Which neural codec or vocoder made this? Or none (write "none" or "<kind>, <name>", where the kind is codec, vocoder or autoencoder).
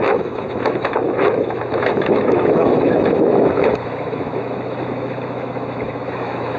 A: autoencoder, DAC-VAE